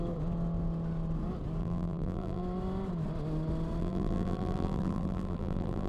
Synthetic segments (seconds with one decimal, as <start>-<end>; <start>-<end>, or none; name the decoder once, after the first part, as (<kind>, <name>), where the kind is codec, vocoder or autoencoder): 1.6-2.4 (vocoder, BigVGAN v2); 3.8-5.9